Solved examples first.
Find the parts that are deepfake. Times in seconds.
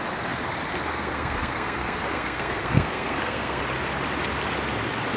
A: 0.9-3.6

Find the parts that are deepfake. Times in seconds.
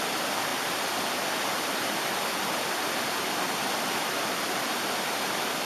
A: none